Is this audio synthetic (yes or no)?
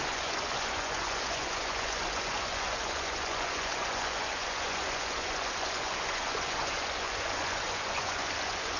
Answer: yes